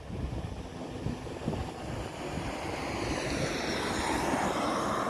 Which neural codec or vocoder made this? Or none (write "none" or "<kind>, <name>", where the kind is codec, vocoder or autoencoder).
none